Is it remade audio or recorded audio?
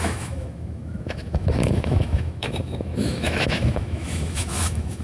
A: remade